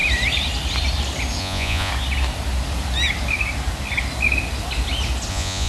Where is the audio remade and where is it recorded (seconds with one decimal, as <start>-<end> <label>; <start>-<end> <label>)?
0.0-1.4 recorded; 1.4-1.9 remade; 1.9-5.3 recorded; 5.3-5.7 remade